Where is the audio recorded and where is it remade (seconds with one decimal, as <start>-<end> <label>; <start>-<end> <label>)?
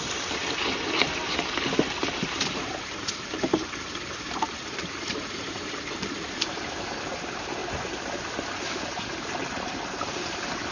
0.0-7.6 remade; 7.6-9.5 recorded; 9.5-10.7 remade